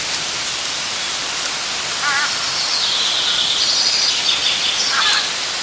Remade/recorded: recorded